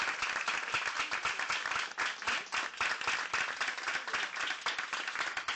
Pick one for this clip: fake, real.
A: real